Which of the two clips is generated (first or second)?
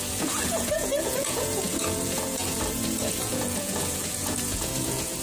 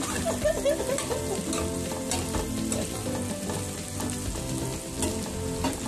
first